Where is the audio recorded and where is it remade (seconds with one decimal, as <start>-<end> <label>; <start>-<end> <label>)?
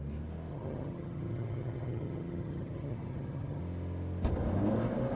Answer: 0.0-0.5 recorded; 0.5-3.6 remade; 3.6-5.2 recorded